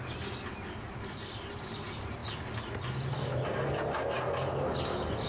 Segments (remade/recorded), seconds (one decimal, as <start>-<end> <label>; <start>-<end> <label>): 0.0-5.3 recorded